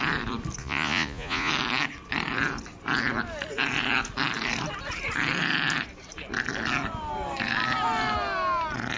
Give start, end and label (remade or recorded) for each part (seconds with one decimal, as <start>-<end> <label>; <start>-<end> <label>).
0.0-0.6 recorded; 0.6-1.5 remade; 1.5-9.0 recorded